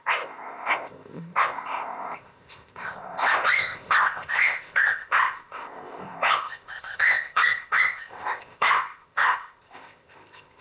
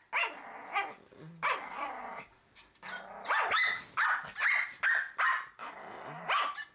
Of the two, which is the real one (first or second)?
second